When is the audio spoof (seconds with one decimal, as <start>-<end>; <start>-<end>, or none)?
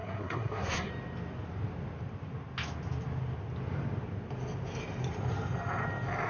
0.0-0.9